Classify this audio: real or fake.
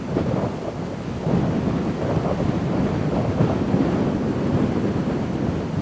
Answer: real